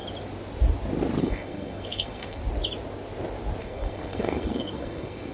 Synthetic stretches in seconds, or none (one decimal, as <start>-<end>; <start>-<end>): 1.2-2.4; 3.6-5.3